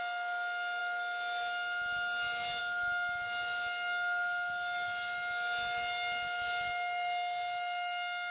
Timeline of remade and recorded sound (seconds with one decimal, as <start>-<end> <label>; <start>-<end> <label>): 0.0-8.3 recorded